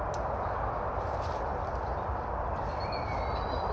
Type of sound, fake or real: real